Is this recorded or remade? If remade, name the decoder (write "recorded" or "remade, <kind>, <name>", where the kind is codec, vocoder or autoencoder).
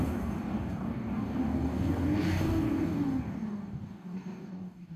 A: remade, codec, DAC